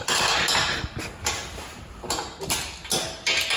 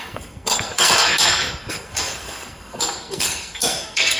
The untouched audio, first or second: first